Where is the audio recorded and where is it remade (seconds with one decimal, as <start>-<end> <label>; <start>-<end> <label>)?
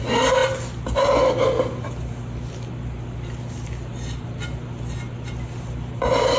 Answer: 0.0-6.4 recorded